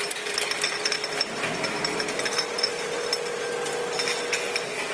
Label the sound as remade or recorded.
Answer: recorded